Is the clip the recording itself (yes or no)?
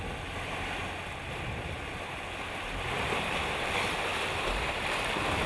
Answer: yes